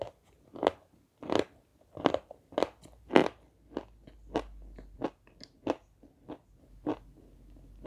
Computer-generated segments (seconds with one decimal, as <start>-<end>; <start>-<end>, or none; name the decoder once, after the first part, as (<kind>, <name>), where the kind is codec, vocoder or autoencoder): 1.7-2.3 (vocoder, BigVGAN v2)